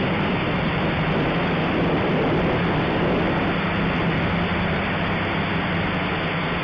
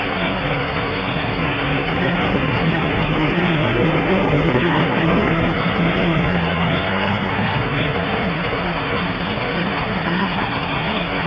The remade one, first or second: second